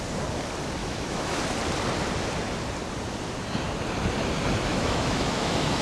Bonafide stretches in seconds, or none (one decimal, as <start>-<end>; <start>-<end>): 0.0-0.8; 1.4-4.7